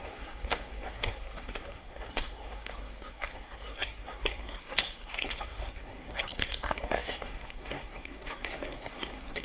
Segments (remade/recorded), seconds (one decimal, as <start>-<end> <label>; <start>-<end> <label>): 0.0-9.4 remade